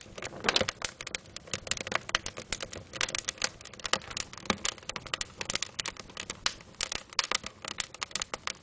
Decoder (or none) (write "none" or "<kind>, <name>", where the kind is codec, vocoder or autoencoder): none